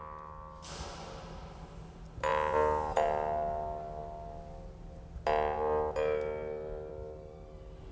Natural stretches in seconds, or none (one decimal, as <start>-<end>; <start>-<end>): 0.0-7.9

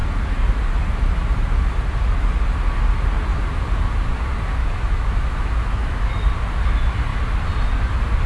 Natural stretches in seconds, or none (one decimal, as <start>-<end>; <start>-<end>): 0.0-4.6; 6.1-8.3